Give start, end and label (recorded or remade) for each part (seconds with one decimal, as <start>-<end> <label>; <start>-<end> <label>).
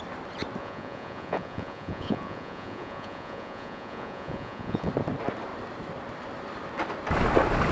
0.0-0.6 recorded; 0.6-4.9 remade; 4.9-7.7 recorded